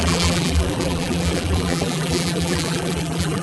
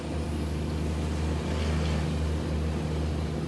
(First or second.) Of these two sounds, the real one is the second